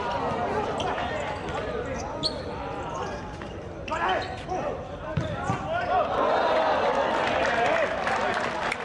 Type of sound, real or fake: real